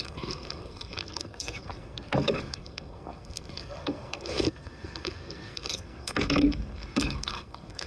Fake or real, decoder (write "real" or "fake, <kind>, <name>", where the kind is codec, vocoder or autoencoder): fake, codec, SNAC